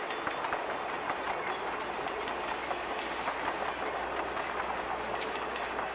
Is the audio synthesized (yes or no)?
no